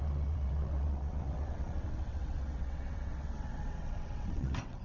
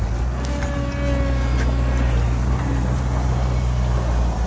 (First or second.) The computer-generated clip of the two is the first